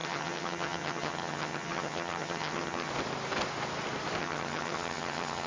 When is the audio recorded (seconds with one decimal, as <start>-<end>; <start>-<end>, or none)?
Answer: 2.9-4.2